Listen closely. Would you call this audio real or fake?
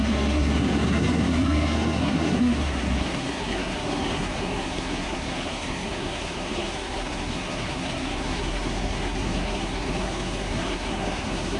fake